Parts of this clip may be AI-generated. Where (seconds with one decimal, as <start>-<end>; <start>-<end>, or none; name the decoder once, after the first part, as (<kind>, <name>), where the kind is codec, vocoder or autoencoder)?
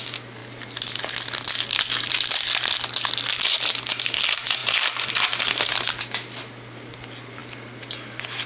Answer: none